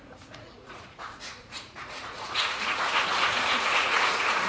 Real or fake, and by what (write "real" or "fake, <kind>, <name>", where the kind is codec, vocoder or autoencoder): fake, vocoder, Vocos